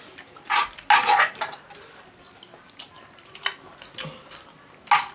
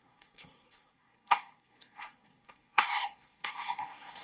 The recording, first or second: first